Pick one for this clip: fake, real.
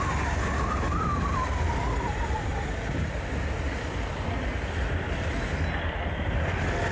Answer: real